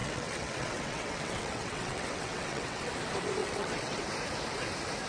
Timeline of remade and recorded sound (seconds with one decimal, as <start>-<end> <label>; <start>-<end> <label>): 0.0-2.9 remade; 2.9-3.4 recorded; 3.4-4.0 remade; 4.0-5.1 recorded

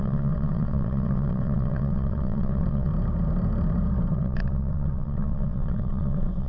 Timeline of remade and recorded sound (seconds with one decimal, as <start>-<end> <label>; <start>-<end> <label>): 0.0-2.9 remade; 2.9-4.1 recorded; 4.1-6.5 remade

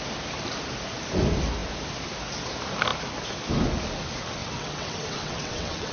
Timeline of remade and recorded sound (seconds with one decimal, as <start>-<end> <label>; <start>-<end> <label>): 0.0-4.4 recorded; 4.4-5.9 remade

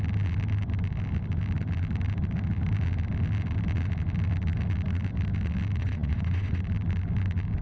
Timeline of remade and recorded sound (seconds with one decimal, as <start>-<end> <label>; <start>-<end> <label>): 0.0-5.8 recorded; 5.8-6.6 remade; 6.6-7.6 recorded

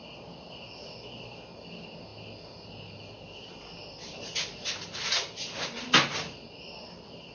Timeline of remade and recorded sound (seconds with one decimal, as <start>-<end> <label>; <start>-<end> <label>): 0.0-7.3 recorded

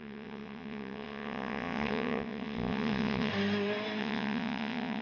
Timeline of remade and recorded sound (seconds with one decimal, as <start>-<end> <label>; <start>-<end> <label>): 0.0-3.3 remade; 3.3-4.0 recorded; 4.0-5.0 remade

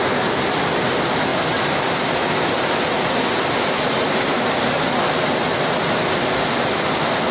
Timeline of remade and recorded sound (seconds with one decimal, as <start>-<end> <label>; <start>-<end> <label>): 0.0-7.3 recorded